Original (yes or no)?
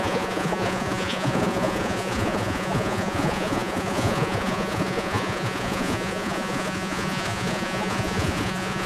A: no